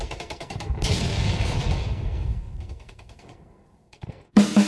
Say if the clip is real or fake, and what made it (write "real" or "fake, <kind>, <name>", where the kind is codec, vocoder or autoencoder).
fake, codec, SNAC